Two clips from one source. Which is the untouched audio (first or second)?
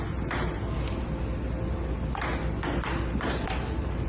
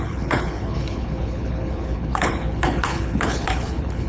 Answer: first